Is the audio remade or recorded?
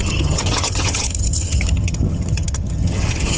remade